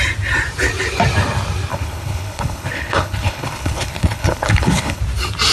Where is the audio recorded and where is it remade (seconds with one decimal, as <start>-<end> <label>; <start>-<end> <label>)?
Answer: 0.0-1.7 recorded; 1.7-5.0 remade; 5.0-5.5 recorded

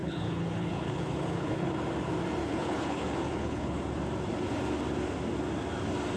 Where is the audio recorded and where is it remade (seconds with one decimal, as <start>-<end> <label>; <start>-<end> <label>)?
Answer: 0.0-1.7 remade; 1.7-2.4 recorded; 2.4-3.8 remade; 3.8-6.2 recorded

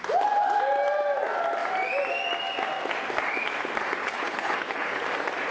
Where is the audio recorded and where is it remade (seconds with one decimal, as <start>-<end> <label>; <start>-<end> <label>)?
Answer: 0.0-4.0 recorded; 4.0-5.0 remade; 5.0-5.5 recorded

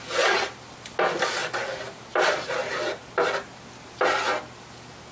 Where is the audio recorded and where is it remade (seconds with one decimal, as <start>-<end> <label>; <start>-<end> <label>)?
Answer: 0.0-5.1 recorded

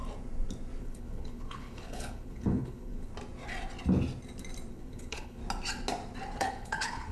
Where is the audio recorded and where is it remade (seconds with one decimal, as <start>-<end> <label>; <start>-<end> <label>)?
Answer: 0.0-0.8 recorded; 0.8-3.1 remade; 3.1-4.7 recorded; 4.7-5.4 remade; 5.4-6.4 recorded; 6.4-7.1 remade

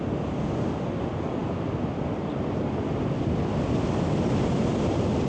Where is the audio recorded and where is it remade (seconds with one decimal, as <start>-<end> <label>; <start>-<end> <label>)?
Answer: 0.0-5.3 recorded